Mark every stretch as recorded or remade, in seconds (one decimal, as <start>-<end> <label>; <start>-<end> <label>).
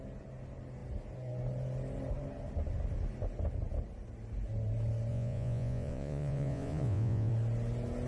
0.0-5.1 recorded; 5.1-7.3 remade; 7.3-8.1 recorded